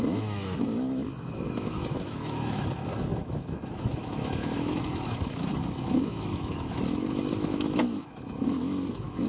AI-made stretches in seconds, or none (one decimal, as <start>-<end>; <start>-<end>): 0.0-9.3